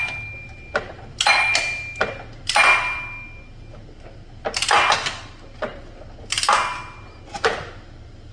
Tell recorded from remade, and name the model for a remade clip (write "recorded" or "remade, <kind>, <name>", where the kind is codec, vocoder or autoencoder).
recorded